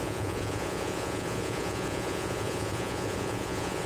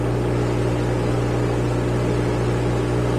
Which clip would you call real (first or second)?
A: second